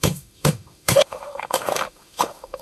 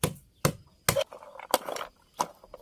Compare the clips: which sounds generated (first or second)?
first